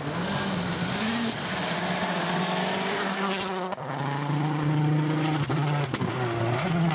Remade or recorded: recorded